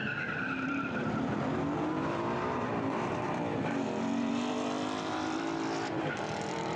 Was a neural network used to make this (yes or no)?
yes